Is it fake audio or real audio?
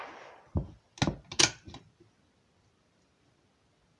real